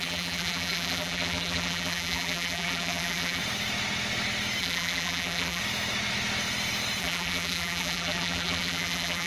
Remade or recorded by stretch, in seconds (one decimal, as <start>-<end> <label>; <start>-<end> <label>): 0.0-3.4 remade; 3.4-4.6 recorded; 4.6-5.6 remade; 5.6-7.0 recorded; 7.0-9.3 remade